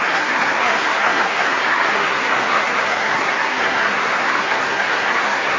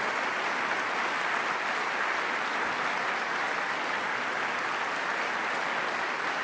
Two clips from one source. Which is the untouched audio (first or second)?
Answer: second